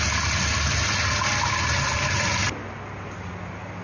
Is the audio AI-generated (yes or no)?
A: no